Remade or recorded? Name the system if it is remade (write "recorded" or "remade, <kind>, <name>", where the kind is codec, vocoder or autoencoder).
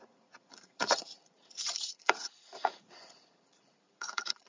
remade, vocoder, Vocos